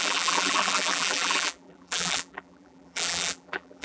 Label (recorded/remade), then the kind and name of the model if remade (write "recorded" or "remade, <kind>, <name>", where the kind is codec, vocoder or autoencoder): remade, vocoder, BigVGAN v2